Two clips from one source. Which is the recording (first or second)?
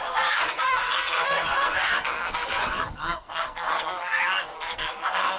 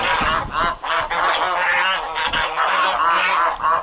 second